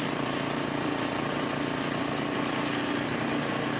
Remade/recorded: recorded